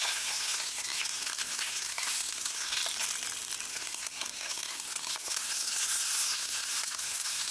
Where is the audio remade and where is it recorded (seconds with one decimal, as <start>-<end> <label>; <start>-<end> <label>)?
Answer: 0.0-2.8 remade; 2.8-3.7 recorded; 3.7-7.5 remade

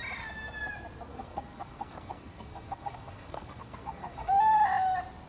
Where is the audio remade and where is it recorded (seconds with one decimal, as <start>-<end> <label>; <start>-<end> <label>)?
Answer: 0.0-1.1 recorded; 1.1-4.3 remade; 4.3-5.3 recorded

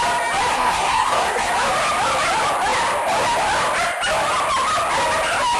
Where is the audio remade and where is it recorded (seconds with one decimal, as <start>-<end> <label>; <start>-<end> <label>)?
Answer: 0.0-0.5 recorded; 0.5-1.5 remade; 1.5-5.6 recorded